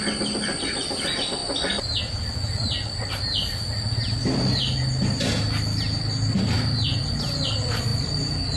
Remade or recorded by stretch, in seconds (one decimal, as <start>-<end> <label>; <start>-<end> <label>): 0.0-8.6 recorded

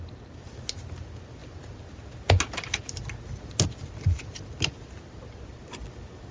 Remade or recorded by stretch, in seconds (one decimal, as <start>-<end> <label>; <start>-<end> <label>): 0.0-6.3 recorded

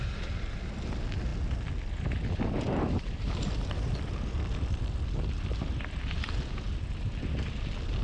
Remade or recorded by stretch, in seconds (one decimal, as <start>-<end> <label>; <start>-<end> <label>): 0.0-8.0 recorded

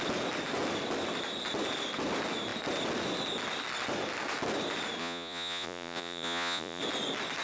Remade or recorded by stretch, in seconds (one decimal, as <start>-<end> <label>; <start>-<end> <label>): 0.0-5.0 recorded; 5.0-6.8 remade; 6.8-7.4 recorded

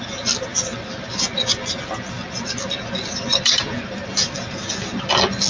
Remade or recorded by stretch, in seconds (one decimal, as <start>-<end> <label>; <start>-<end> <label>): 0.0-5.5 recorded

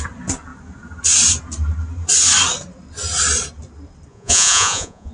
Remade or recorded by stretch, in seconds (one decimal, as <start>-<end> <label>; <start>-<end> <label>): 0.0-4.1 recorded; 4.1-5.1 remade